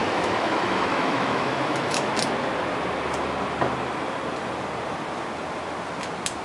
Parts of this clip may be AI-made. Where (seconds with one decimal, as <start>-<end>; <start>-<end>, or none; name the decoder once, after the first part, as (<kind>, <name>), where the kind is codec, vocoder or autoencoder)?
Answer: 0.0-2.1 (autoencoder, DAC-VAE)